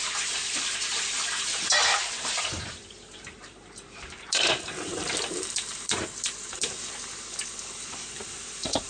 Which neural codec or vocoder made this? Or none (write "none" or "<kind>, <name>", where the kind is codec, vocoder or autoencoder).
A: vocoder, BigVGAN v2